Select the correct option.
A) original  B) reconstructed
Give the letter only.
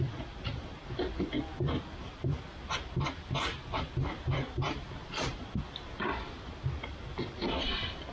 A